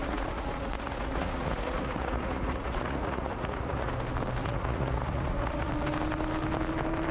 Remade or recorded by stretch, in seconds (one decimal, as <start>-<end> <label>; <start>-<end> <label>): 0.0-3.9 remade; 3.9-4.4 recorded; 4.4-5.7 remade; 5.7-7.1 recorded